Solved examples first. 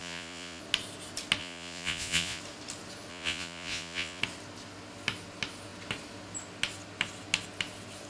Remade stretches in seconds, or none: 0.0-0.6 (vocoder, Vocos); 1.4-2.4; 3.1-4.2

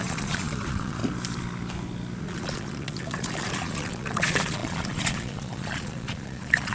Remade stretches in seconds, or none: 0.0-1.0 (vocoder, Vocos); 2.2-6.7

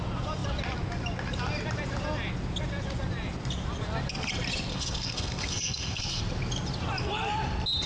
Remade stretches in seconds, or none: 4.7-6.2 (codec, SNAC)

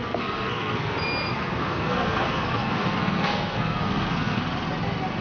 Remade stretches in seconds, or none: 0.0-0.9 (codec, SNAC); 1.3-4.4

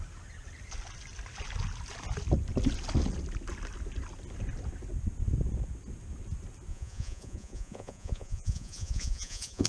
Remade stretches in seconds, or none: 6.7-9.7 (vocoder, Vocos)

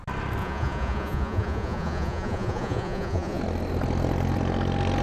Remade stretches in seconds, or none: 0.4-3.4 (vocoder, Vocos)

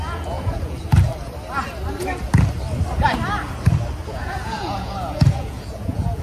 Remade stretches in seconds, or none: 0.0-1.1 (vocoder, Vocos); 4.1-6.2